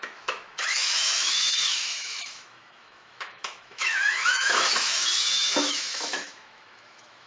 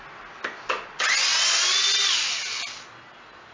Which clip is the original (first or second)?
second